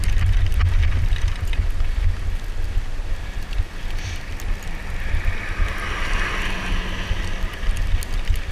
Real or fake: real